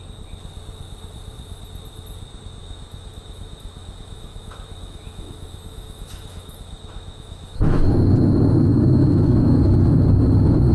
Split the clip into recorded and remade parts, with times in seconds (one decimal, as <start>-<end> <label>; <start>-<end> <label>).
0.0-2.6 recorded; 2.6-7.8 remade; 7.8-8.7 recorded; 8.7-9.5 remade; 9.5-10.7 recorded